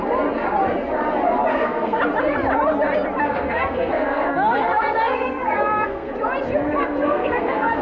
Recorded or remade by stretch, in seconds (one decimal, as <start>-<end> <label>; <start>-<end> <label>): 0.0-1.5 recorded; 1.5-2.0 remade; 2.0-3.2 recorded; 3.2-6.1 remade; 6.1-6.8 recorded; 6.8-7.8 remade